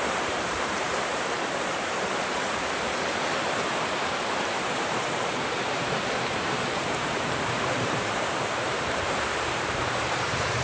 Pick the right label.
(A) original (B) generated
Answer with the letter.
B